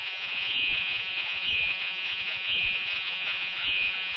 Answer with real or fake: fake